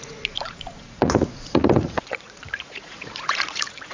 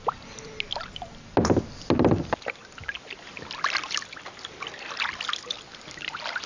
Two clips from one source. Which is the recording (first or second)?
second